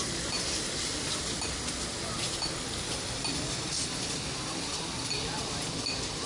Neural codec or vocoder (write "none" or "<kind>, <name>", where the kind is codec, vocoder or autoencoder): none